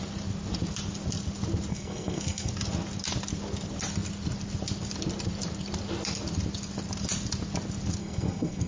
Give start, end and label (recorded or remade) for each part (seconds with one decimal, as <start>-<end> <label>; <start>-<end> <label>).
0.0-1.7 recorded; 1.7-2.5 remade; 2.5-8.0 recorded; 8.0-8.7 remade